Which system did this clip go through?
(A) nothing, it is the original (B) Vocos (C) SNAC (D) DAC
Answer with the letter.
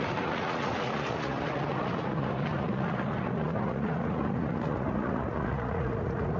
B